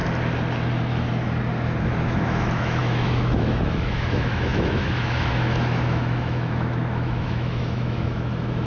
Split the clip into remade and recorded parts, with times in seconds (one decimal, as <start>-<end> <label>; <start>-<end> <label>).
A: 0.0-1.8 recorded; 1.8-8.7 remade